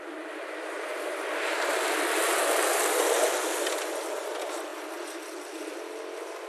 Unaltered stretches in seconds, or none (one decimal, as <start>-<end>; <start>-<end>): none